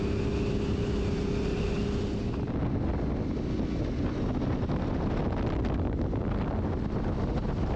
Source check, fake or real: real